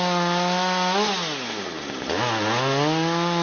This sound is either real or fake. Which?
real